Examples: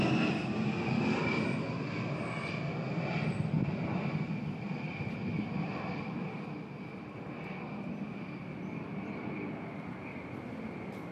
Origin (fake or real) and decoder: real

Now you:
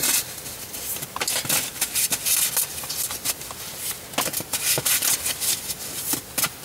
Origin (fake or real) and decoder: real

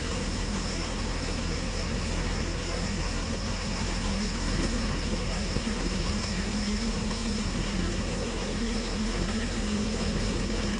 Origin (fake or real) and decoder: fake, codec, SNAC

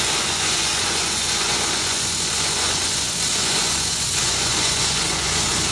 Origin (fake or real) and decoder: fake, vocoder, Vocos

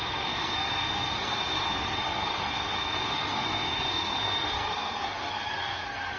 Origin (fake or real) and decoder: fake, codec, SNAC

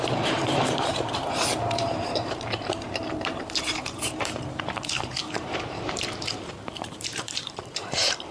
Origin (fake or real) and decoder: fake, vocoder, BigVGAN v2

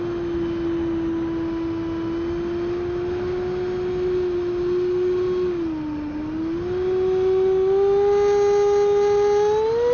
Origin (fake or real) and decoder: real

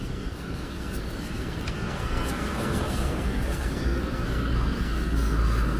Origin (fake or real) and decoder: fake, codec, SNAC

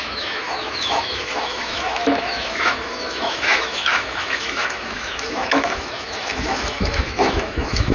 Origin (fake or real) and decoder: fake, autoencoder, DAC-VAE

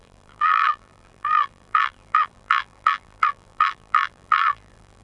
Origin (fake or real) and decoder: fake, vocoder, BigVGAN v2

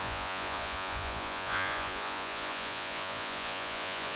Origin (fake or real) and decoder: fake, vocoder, Vocos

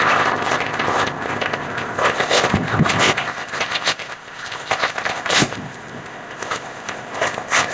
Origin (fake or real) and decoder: fake, codec, ZipCodec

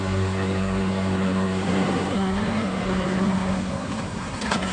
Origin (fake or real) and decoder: fake, codec, SNAC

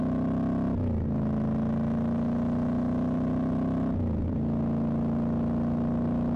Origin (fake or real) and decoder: real